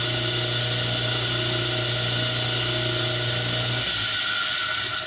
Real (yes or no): yes